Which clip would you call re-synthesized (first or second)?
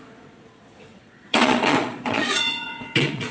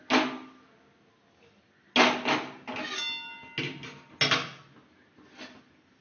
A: first